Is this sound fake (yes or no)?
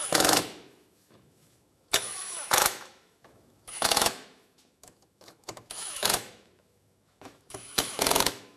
yes